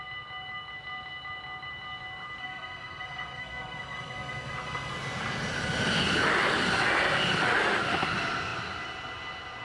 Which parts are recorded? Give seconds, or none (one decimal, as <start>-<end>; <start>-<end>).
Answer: 0.0-2.4; 4.9-9.6